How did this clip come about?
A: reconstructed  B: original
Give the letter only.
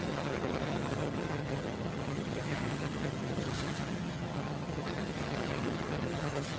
A